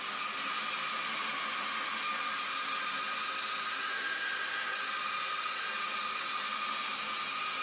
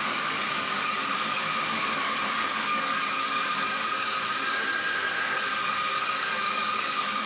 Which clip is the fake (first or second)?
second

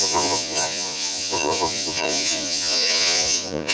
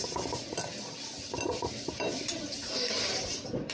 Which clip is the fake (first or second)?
first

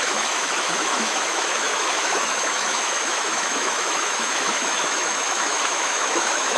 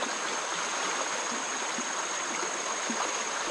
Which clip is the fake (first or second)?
first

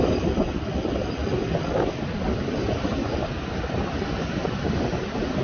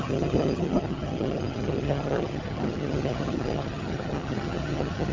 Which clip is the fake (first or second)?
second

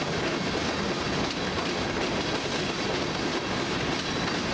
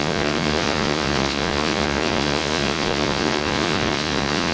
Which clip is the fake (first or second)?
second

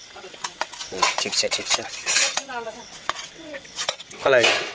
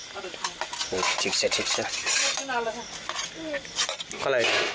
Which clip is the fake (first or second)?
first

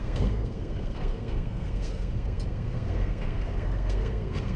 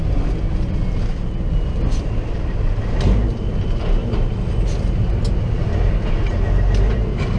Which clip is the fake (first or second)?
first